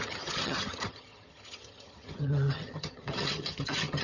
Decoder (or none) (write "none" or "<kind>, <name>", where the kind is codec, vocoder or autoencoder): vocoder, HiFi-GAN